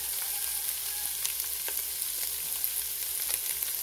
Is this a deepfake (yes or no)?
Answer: no